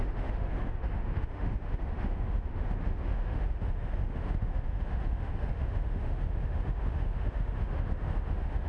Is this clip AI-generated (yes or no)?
yes